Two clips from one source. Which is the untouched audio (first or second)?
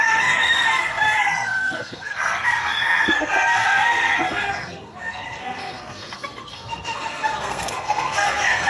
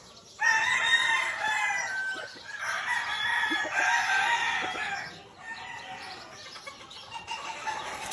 second